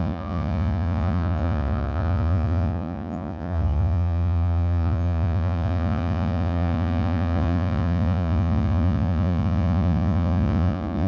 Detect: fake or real fake